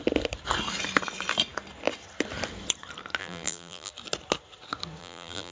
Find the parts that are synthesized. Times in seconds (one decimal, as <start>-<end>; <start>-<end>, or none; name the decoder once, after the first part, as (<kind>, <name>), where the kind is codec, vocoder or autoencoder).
3.2-3.9 (vocoder, BigVGAN v2); 5.0-5.5